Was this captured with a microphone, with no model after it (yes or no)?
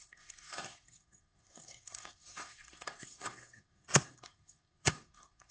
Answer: no